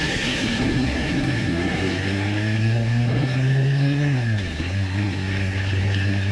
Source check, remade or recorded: remade